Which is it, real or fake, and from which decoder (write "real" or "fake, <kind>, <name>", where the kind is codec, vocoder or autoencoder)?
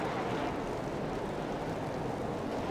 real